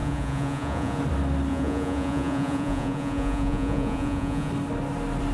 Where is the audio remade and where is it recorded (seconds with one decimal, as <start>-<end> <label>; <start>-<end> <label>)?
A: 0.0-1.0 remade; 1.0-1.5 recorded; 1.5-4.5 remade; 4.5-5.3 recorded